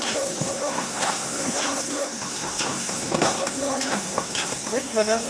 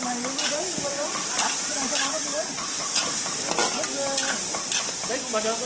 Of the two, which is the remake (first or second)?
first